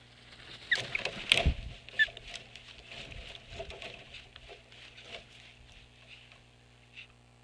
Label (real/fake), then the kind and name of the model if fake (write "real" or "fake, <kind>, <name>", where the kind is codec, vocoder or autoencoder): real